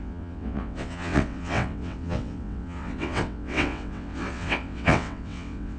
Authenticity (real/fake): fake